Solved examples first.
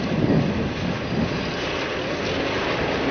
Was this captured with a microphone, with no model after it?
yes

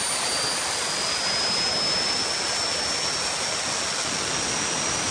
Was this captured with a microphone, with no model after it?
yes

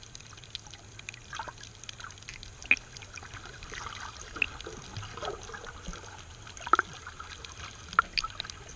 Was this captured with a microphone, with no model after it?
yes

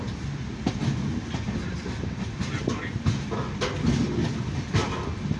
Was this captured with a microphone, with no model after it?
yes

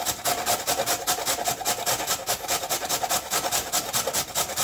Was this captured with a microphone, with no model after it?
yes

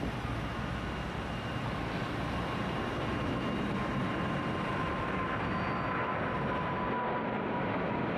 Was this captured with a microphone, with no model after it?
yes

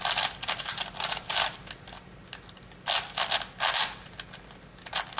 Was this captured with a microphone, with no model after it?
yes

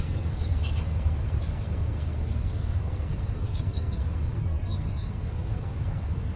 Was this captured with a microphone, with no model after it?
no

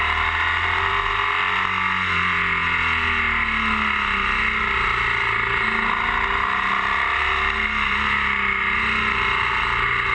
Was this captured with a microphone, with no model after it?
yes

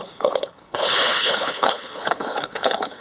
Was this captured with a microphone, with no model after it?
no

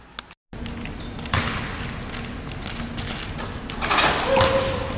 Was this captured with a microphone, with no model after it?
yes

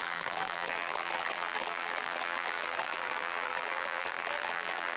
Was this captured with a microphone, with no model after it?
no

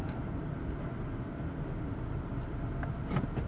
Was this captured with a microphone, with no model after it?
yes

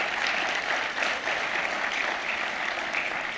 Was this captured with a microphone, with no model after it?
yes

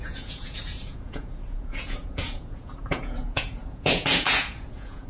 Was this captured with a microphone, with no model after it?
no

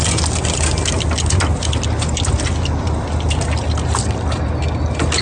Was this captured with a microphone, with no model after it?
yes